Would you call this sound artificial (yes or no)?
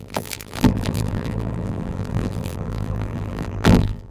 yes